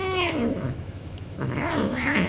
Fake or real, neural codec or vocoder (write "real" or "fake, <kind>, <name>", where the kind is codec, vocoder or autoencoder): fake, autoencoder, DAC-VAE